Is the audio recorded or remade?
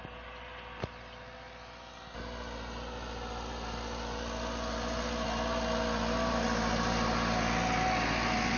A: recorded